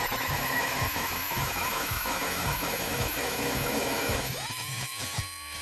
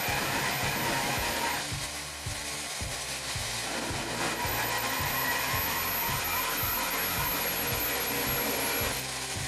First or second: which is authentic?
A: second